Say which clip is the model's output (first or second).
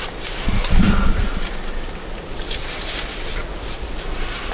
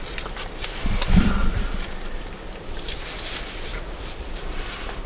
second